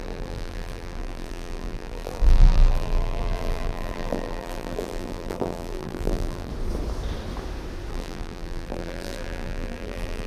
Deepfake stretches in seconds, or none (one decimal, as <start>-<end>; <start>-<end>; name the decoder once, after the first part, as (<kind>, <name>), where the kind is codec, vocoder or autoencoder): 0.0-6.5 (vocoder, BigVGAN v2); 7.9-10.3